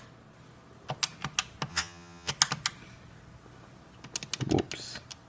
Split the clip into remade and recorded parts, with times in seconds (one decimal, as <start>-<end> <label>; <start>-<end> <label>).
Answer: 0.0-1.7 recorded; 1.7-2.3 remade; 2.3-5.3 recorded